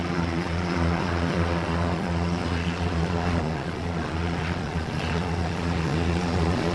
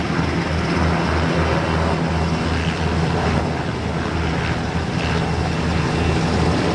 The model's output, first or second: first